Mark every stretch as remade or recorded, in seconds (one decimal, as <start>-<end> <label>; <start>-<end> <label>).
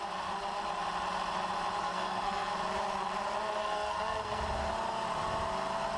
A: 0.0-1.8 recorded; 1.8-2.5 remade; 2.5-3.6 recorded; 3.6-4.4 remade; 4.4-6.0 recorded